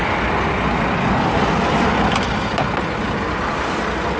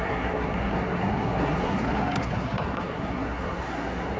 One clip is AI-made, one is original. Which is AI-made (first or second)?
second